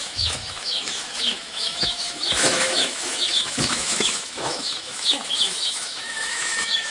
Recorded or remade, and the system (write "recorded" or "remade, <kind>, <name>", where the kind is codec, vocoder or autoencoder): remade, autoencoder, DAC-VAE